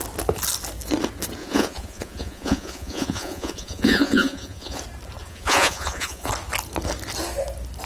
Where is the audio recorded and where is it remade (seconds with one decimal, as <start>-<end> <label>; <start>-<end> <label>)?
0.0-1.4 recorded; 1.4-4.8 remade; 4.8-5.2 recorded; 5.2-6.3 remade; 6.3-7.9 recorded